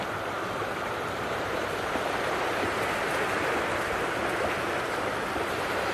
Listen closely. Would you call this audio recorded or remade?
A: recorded